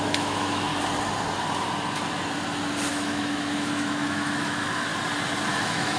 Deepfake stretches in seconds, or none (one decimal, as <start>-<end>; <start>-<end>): 0.0-0.7; 2.9-4.9; 5.6-6.0